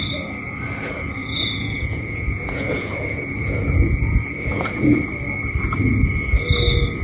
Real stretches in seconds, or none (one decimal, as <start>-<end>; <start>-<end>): 0.0-1.2; 5.0-7.0